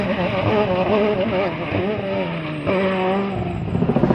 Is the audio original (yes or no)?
yes